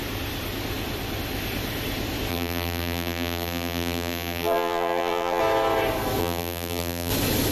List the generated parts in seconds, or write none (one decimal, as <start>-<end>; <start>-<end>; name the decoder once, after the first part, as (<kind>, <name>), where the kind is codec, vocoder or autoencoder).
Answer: 2.3-5.4 (vocoder, BigVGAN v2); 6.2-7.1